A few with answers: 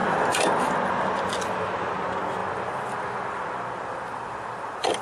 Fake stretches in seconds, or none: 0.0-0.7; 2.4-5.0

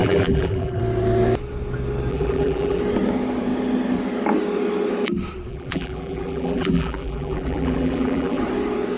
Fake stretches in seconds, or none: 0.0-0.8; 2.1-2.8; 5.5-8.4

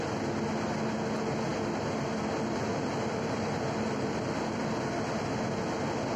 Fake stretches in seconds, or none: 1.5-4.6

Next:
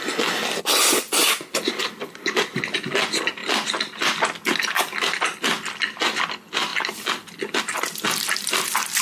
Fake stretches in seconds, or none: none